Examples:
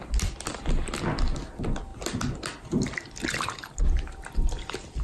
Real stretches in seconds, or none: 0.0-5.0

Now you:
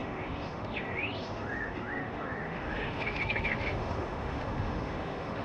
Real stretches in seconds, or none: none

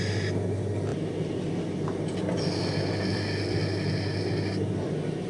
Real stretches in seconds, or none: 0.0-5.3

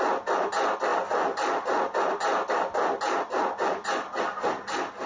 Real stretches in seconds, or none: 0.0-5.1

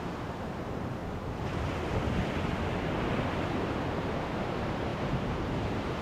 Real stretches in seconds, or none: 1.0-4.3